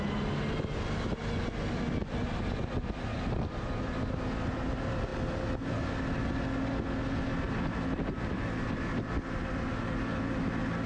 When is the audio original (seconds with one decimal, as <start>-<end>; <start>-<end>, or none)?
0.0-10.9